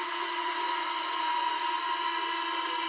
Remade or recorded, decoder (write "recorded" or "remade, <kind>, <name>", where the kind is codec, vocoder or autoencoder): recorded